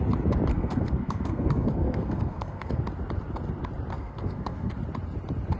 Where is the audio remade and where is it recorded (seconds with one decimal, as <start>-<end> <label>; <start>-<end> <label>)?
0.0-0.5 recorded; 0.5-2.8 remade; 2.8-3.9 recorded; 3.9-4.7 remade; 4.7-5.6 recorded